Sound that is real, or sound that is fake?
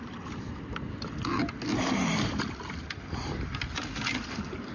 real